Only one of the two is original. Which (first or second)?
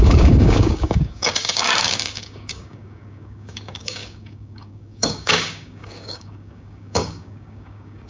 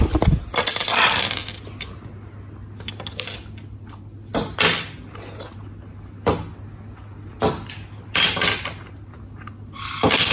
second